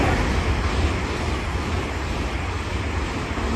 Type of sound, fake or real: real